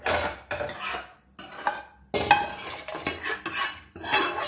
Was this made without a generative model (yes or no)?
yes